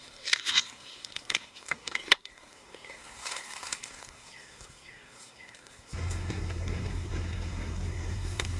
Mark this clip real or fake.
fake